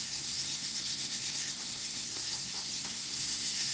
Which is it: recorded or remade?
remade